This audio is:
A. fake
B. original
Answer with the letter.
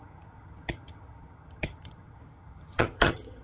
A